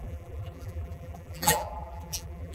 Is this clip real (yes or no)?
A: no